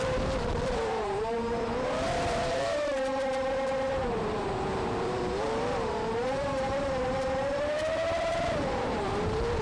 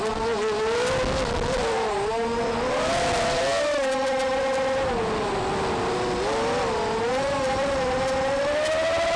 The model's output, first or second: first